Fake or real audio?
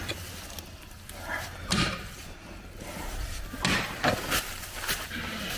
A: real